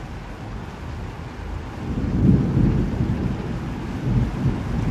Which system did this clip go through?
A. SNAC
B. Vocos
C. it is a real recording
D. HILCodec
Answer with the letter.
C